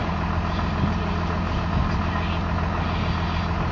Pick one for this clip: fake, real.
real